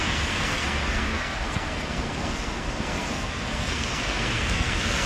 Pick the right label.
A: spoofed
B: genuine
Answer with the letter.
A